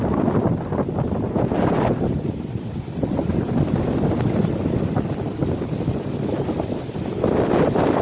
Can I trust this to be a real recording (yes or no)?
yes